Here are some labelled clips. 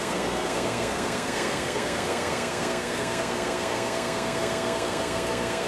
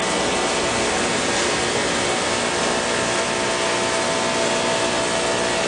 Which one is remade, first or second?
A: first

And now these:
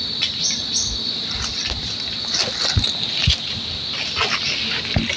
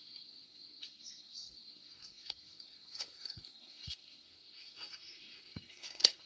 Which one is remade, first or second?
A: second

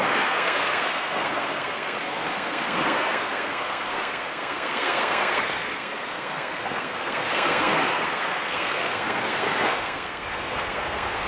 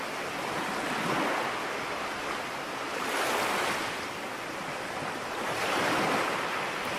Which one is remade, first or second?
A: first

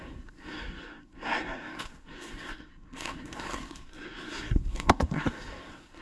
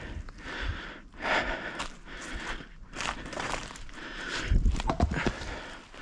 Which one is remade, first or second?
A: first